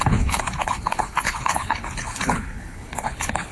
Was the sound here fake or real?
fake